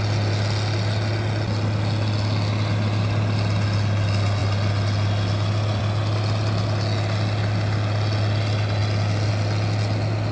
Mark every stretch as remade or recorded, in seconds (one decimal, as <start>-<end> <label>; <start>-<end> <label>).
0.0-10.3 recorded